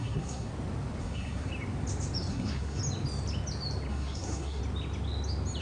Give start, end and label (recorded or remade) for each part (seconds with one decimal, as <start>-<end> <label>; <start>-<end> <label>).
0.0-0.5 remade; 0.5-1.0 recorded; 1.0-1.5 remade; 1.5-2.3 recorded; 2.3-2.8 remade; 2.8-3.9 recorded; 3.9-4.6 remade; 4.6-5.6 recorded